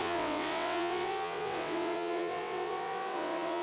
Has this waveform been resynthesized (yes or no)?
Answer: yes